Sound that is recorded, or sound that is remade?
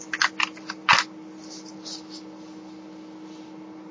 recorded